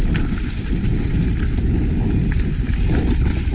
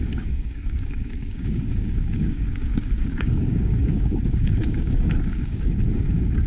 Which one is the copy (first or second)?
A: second